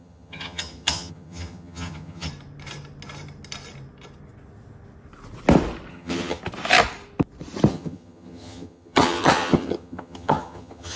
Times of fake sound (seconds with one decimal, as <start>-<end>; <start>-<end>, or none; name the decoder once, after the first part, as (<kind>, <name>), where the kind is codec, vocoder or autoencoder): 0.0-2.3 (vocoder, HiFi-GAN); 5.9-6.4; 7.7-11.0